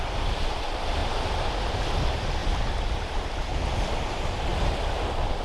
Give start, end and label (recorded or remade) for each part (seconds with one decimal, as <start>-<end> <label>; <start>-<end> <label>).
0.0-5.4 recorded